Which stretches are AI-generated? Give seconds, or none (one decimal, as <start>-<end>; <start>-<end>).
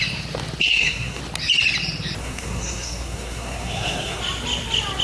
0.6-1.2; 2.2-4.2